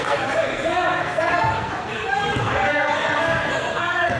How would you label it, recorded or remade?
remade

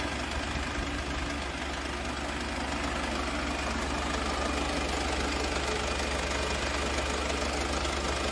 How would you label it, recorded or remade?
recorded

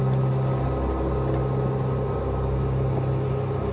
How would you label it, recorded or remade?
recorded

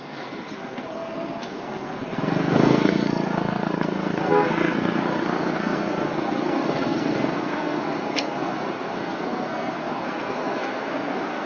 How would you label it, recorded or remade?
remade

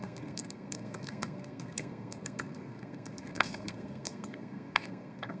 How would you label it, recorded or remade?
remade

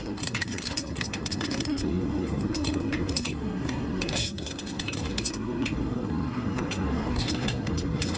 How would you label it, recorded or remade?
remade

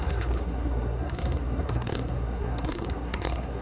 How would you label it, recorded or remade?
remade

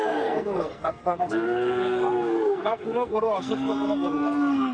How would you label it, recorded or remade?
remade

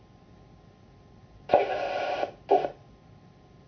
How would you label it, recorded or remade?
recorded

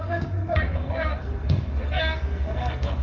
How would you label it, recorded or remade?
remade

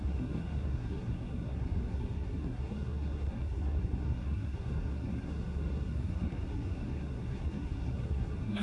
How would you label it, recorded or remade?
remade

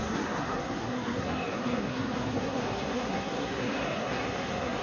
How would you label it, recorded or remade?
remade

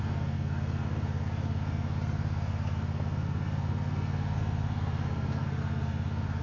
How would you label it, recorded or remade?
remade